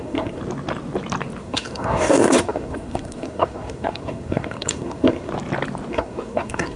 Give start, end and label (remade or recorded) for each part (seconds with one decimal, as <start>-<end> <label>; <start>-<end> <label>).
0.0-0.4 remade; 0.4-1.4 recorded; 1.4-5.3 remade; 5.3-5.9 recorded; 5.9-6.8 remade